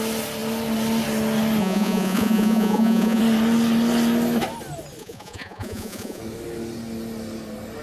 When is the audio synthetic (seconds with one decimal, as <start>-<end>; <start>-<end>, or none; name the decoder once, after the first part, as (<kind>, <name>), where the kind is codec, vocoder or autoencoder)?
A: 1.6-3.2 (vocoder, Vocos); 5.0-6.2